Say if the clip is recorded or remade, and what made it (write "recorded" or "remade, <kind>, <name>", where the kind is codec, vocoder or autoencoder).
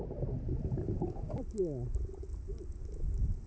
recorded